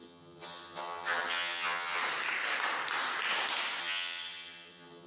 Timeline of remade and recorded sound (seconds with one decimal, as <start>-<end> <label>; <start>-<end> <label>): 0.0-2.0 remade; 2.0-3.8 recorded; 3.8-5.1 remade